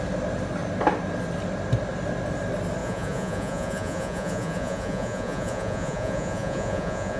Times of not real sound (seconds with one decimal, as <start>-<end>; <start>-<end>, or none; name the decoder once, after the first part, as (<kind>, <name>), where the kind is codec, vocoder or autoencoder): 2.8-7.2 (vocoder, Vocos)